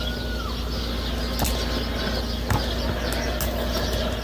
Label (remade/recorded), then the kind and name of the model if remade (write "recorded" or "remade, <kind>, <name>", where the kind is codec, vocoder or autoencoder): recorded